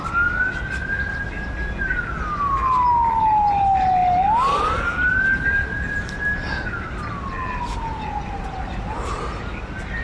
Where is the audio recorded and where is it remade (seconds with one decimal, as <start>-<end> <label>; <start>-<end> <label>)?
0.0-10.0 recorded